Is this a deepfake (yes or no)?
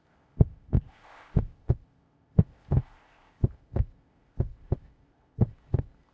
yes